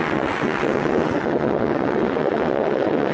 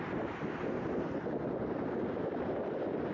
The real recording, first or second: second